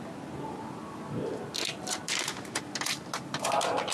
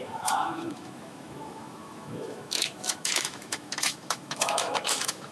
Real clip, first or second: first